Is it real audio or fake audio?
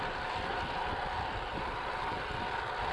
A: real